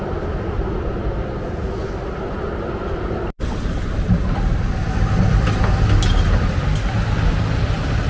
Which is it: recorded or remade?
recorded